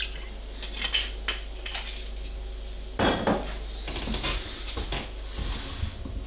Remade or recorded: recorded